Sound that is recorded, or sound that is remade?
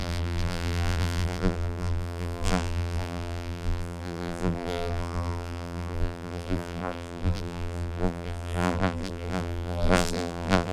remade